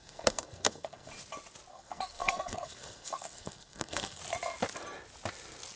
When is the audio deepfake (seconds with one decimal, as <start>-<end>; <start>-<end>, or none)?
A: 0.0-1.1; 1.7-4.2